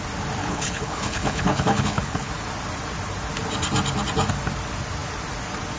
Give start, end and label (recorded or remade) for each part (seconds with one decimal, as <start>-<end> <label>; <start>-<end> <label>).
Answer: 0.0-0.4 recorded; 0.4-2.3 remade; 2.3-5.8 recorded